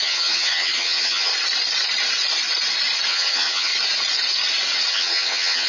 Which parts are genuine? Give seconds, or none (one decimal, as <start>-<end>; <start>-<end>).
1.3-3.1; 3.7-4.9